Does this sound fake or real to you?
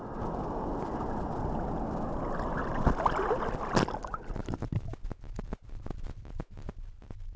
real